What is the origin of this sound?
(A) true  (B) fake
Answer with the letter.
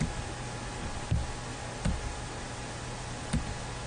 A